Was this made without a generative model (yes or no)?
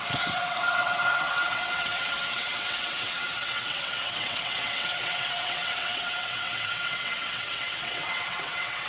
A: no